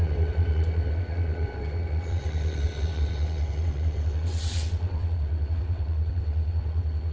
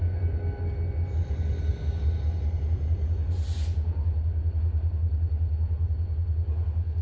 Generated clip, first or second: first